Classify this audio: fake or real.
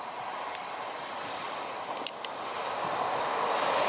real